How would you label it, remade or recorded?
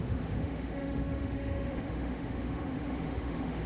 remade